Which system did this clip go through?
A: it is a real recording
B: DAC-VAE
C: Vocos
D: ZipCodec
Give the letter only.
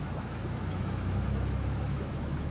B